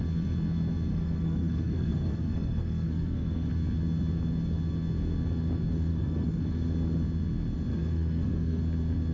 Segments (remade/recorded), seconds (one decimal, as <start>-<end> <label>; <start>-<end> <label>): 0.0-0.9 recorded; 0.9-3.5 remade; 3.5-5.9 recorded; 5.9-6.4 remade; 6.4-7.7 recorded; 7.7-8.6 remade; 8.6-9.1 recorded